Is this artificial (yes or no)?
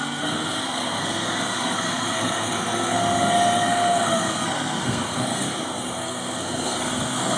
yes